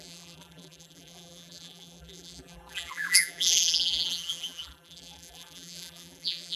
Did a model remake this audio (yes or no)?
yes